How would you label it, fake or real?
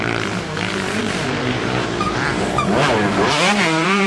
fake